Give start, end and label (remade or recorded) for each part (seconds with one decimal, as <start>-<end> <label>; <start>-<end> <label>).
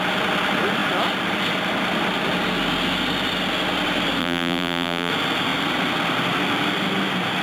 0.0-4.2 recorded; 4.2-5.1 remade; 5.1-7.4 recorded